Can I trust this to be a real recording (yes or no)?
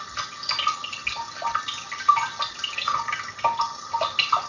yes